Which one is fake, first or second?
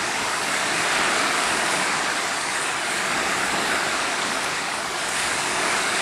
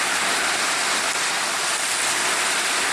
first